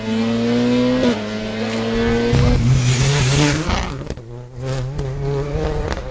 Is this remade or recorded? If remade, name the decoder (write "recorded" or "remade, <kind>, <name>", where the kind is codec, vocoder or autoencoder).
recorded